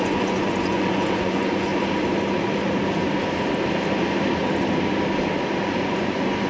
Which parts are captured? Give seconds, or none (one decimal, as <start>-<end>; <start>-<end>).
1.7-5.6